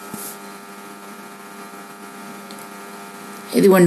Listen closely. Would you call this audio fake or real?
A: real